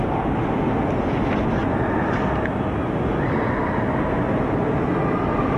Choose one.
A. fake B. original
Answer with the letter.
B